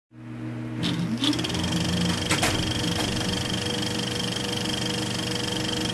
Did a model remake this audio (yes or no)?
no